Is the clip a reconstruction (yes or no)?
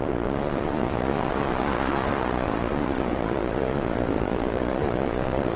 yes